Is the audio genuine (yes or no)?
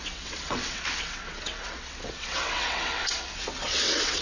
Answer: no